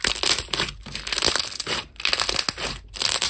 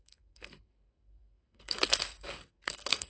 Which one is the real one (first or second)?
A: first